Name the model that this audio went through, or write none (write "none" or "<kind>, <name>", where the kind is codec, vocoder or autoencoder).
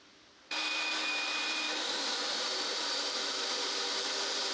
vocoder, BigVGAN v2